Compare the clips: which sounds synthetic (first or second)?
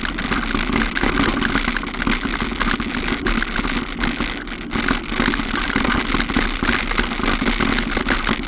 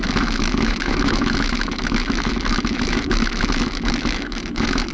second